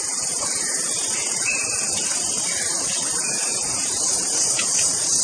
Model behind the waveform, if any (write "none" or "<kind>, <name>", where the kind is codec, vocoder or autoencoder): none